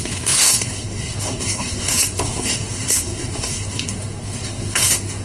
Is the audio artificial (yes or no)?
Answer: yes